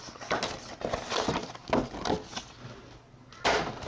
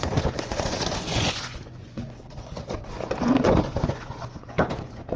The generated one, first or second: second